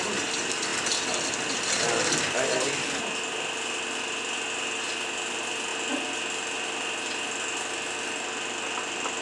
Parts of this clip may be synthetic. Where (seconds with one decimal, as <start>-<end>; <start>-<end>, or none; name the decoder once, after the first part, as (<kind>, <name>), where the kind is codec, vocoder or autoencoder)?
none